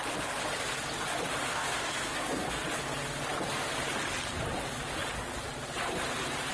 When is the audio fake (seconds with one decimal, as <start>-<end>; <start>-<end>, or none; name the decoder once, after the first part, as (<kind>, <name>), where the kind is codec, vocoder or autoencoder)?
1.5-2.6 (codec, SNAC)